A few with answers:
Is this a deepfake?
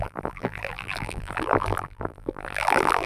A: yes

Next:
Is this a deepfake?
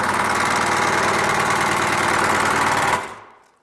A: no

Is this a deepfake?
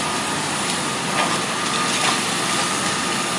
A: no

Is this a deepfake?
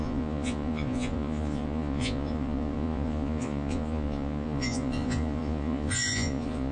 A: yes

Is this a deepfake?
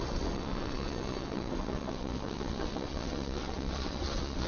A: yes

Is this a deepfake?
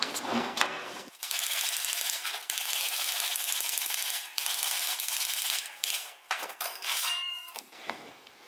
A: yes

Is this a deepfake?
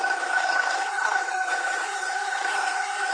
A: yes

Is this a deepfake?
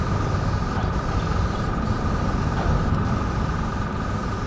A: yes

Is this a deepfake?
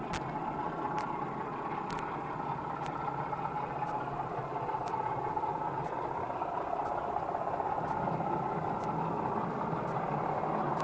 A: no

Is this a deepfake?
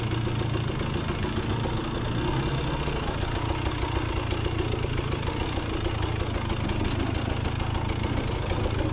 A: no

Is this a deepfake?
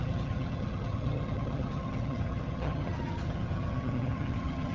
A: yes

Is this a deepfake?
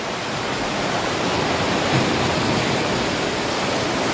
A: no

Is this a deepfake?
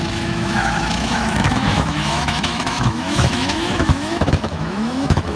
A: yes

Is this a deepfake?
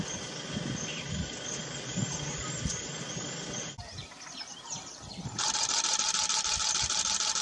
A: yes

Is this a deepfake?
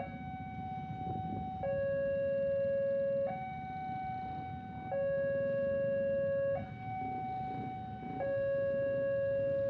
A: no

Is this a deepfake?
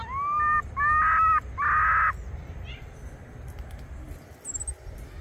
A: no